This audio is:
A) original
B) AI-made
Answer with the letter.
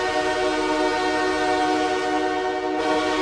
A